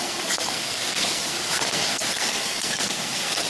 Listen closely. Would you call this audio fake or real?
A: fake